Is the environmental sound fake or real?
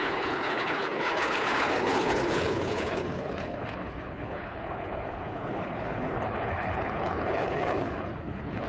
fake